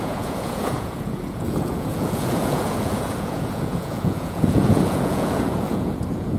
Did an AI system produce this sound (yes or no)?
yes